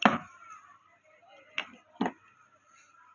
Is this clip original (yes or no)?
yes